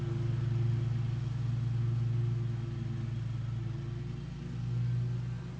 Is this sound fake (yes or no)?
no